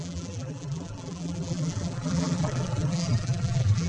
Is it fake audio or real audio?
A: fake